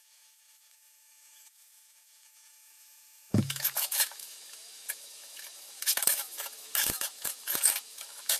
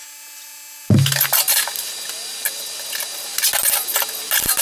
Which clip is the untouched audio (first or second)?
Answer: second